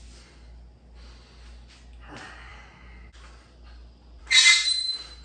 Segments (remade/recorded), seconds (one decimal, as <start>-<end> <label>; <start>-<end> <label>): 0.0-5.2 recorded